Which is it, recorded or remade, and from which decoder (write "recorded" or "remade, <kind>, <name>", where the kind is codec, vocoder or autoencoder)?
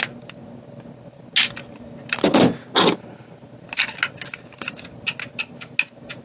recorded